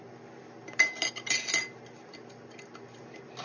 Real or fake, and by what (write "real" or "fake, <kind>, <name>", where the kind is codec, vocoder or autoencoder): real